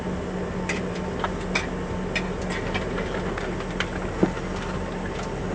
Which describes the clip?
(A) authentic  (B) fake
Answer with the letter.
A